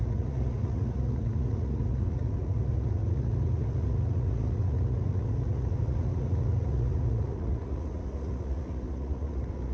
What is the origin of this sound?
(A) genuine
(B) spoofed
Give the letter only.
B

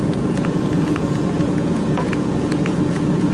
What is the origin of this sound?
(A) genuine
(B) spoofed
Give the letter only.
B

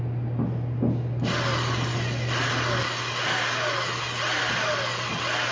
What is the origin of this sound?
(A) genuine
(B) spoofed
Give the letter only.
A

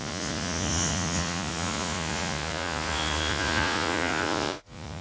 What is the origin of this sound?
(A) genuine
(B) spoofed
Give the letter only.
B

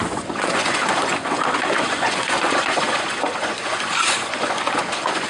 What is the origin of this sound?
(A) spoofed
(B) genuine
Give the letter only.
A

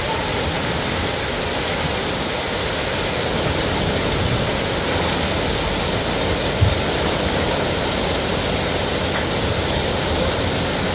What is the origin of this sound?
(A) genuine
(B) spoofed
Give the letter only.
A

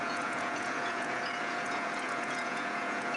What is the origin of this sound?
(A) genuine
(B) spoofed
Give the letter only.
B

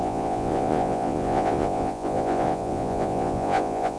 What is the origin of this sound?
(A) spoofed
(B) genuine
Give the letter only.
A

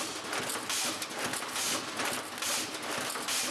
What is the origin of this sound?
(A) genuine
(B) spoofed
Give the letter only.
A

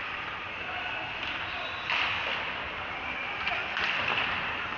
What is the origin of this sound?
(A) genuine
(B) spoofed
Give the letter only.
A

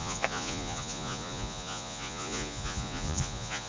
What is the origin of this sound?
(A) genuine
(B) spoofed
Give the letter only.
B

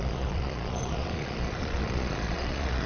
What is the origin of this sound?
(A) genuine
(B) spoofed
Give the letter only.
B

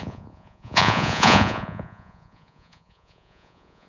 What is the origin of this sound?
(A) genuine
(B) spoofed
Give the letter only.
B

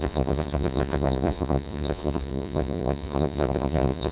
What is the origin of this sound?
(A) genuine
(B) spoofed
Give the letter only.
B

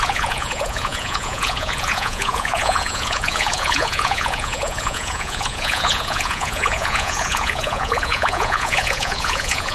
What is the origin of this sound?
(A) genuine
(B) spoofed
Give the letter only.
B